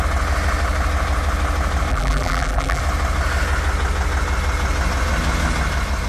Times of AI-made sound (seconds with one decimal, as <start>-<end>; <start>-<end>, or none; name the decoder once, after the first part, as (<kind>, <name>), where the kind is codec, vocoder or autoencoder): 1.9-2.8 (vocoder, BigVGAN v2)